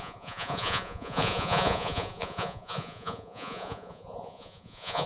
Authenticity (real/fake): fake